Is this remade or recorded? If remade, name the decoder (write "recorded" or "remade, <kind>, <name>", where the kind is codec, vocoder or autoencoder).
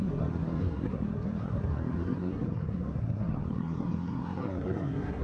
remade, codec, SNAC